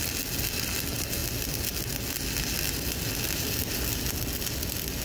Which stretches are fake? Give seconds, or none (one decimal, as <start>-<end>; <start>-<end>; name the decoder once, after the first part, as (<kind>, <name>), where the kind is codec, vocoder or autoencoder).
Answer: none